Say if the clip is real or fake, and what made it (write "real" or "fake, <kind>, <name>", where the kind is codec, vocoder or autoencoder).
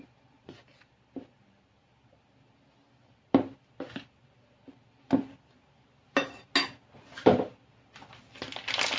real